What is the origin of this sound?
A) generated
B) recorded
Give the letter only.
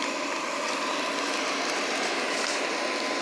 B